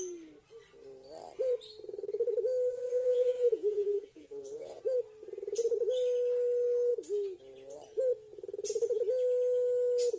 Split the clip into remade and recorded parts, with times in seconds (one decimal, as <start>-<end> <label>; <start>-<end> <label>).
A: 0.0-2.7 recorded; 2.7-4.8 remade; 4.8-10.2 recorded

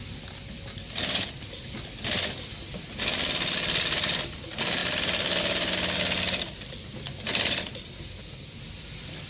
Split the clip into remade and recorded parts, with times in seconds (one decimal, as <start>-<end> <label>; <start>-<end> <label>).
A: 0.0-9.3 recorded

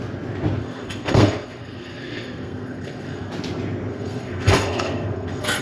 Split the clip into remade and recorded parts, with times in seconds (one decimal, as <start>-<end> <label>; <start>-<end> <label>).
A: 0.0-0.6 recorded; 0.6-3.3 remade; 3.3-3.9 recorded; 3.9-5.6 remade

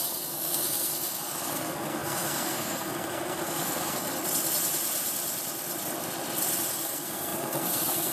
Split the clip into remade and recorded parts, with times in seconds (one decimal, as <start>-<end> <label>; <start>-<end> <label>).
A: 0.0-4.1 remade; 4.1-6.7 recorded; 6.7-8.1 remade

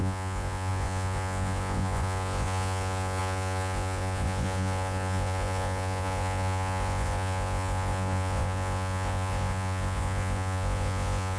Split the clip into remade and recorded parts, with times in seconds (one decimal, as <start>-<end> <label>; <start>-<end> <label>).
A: 0.0-11.4 remade

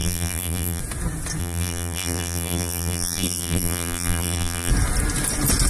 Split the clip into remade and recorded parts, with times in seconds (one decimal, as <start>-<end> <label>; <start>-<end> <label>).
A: 0.0-0.8 remade; 0.8-1.4 recorded; 1.4-4.7 remade; 4.7-5.7 recorded

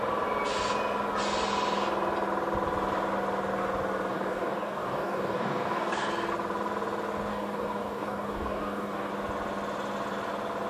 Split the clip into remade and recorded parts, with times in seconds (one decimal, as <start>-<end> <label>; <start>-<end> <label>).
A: 0.0-4.1 recorded; 4.1-6.1 remade; 6.1-7.3 recorded; 7.3-9.1 remade; 9.1-10.7 recorded